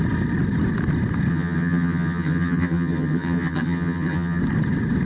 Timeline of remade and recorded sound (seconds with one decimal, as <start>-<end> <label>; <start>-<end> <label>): 0.0-1.3 recorded; 1.3-4.4 remade; 4.4-5.1 recorded